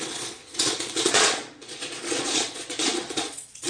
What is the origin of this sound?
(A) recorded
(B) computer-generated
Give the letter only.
B